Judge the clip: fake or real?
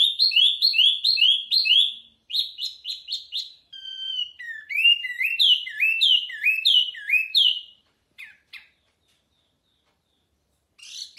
fake